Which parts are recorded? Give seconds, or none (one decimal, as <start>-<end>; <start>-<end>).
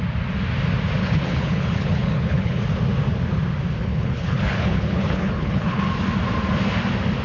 0.0-1.0; 2.6-3.8; 5.8-7.2